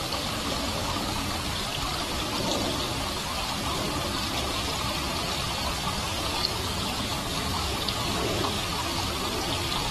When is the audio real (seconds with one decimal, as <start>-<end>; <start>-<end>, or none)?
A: 0.0-0.8; 1.5-5.8; 8.6-9.9